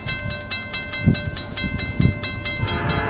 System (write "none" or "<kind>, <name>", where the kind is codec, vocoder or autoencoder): none